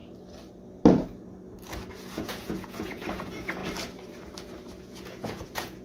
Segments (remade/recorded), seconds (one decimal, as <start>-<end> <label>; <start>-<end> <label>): 0.0-1.9 recorded; 1.9-3.6 remade; 3.6-4.8 recorded; 4.8-5.8 remade